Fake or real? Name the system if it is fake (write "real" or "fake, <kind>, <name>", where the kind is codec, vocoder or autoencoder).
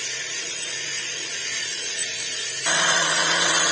fake, vocoder, Vocos